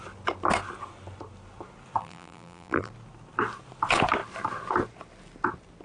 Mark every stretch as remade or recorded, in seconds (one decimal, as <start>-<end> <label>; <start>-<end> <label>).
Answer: 0.0-2.0 recorded; 2.0-2.9 remade; 2.9-5.8 recorded